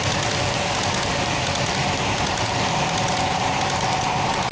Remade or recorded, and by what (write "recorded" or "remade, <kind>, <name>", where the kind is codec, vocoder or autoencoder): recorded